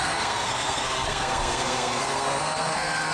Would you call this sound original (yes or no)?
no